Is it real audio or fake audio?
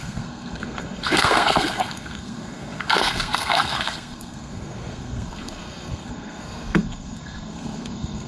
fake